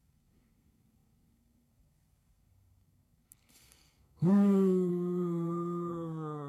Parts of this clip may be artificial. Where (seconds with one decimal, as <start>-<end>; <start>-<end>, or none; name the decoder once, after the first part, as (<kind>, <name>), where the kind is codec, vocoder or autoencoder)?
0.0-6.5 (codec, SNAC)